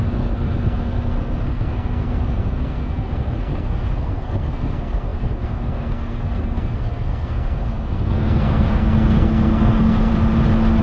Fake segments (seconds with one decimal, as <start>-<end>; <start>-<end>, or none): 0.0-10.1